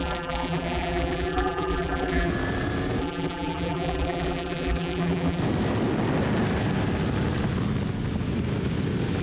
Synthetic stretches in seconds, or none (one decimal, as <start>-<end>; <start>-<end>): 0.0-2.3; 3.0-5.4